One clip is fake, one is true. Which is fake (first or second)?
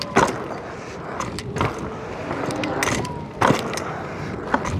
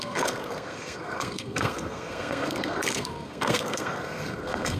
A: second